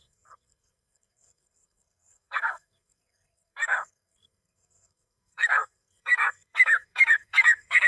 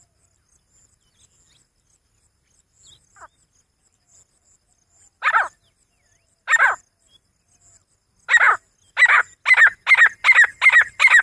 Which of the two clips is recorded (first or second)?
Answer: second